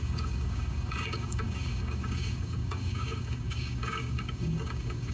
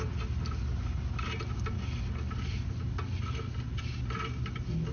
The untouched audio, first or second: second